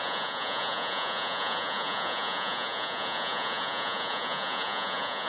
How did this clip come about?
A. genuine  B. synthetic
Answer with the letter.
B